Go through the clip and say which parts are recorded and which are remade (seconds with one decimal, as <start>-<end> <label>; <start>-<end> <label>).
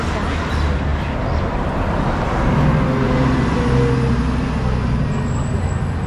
0.0-6.1 recorded